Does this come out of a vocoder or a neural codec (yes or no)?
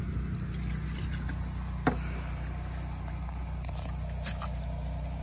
no